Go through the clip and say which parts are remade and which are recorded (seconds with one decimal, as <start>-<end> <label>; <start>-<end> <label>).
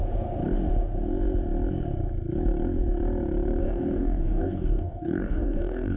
0.0-3.6 recorded; 3.6-6.0 remade